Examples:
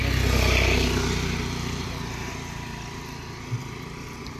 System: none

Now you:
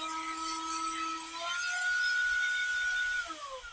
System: none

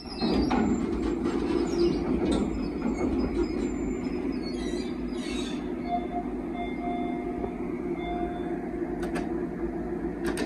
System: none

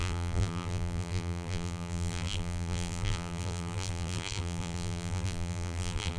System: vocoder, BigVGAN v2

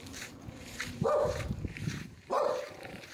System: vocoder, BigVGAN v2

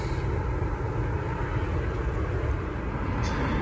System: none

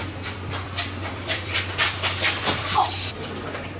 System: vocoder, BigVGAN v2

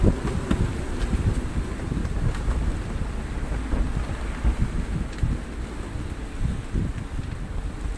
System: none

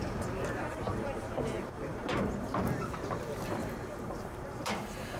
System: vocoder, BigVGAN v2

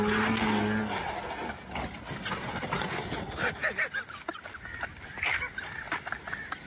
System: none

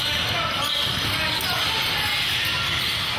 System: none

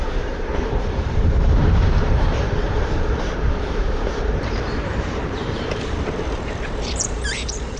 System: vocoder, BigVGAN v2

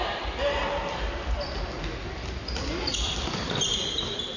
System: none